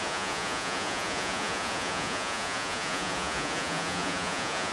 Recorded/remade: remade